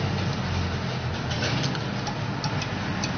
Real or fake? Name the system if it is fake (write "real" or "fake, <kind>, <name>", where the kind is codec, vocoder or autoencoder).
real